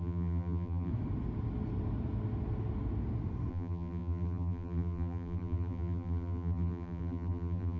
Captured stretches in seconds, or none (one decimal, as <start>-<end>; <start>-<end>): 0.9-3.5